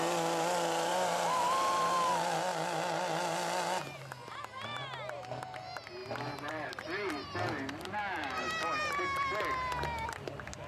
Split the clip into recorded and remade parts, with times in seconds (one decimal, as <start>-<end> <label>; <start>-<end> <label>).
0.0-0.9 recorded; 0.9-1.9 remade; 1.9-6.0 recorded; 6.0-9.0 remade; 9.0-10.7 recorded